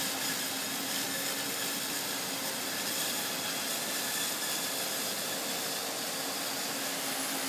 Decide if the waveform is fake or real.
real